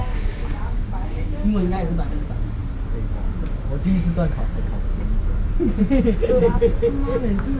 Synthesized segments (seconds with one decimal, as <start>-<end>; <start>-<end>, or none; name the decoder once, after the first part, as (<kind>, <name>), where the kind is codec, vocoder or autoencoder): 0.0-1.9 (codec, DAC); 7.0-7.6